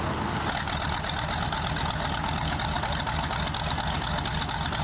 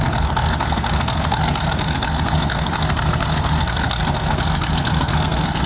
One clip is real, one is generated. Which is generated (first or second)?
second